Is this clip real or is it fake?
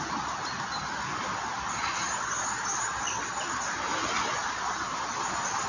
real